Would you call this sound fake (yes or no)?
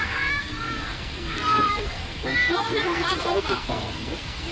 yes